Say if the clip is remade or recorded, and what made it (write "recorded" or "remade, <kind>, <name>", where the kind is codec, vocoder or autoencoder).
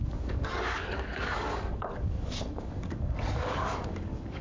remade, codec, DAC